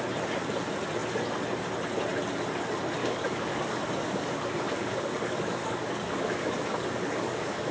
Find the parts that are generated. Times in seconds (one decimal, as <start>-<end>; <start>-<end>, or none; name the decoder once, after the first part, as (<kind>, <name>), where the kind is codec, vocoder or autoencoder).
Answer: 3.0-7.7 (codec, DAC)